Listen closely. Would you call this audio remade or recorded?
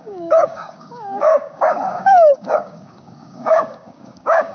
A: remade